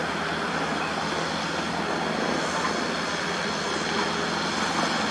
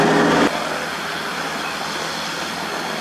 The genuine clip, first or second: first